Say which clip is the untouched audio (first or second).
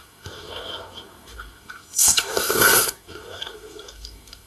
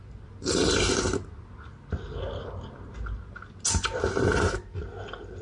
second